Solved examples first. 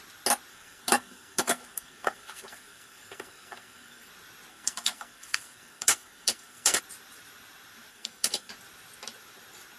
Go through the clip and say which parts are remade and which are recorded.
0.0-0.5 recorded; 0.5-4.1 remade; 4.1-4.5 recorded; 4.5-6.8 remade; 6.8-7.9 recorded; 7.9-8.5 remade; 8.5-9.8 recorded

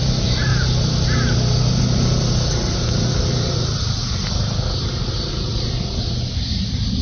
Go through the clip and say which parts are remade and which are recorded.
0.0-0.5 remade; 0.5-2.5 recorded; 2.5-4.0 remade; 4.0-5.3 recorded; 5.3-7.0 remade

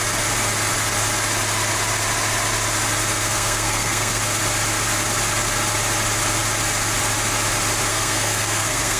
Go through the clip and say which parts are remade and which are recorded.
0.0-3.2 recorded; 3.2-4.2 remade; 4.2-7.9 recorded; 7.9-9.0 remade

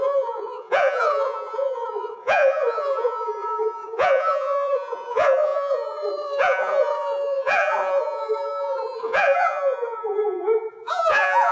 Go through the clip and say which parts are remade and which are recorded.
0.0-11.5 remade